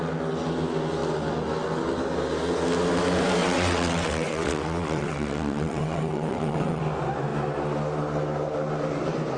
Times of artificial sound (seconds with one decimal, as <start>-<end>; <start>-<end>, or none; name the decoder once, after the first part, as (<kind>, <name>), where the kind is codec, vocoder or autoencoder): 3.4-6.8 (vocoder, WaveNeXt)